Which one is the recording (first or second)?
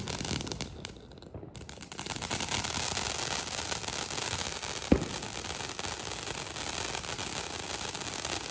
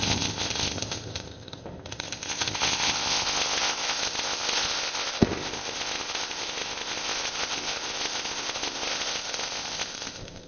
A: first